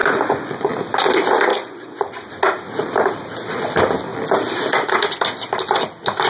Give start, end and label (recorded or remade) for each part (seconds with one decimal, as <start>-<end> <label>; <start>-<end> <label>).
0.0-0.7 remade; 0.7-1.5 recorded; 1.5-2.3 remade; 2.3-6.3 recorded